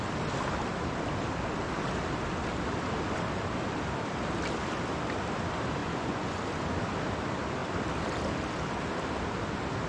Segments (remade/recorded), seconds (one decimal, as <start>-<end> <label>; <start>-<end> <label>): 0.0-5.8 recorded; 5.8-6.4 remade; 6.4-9.9 recorded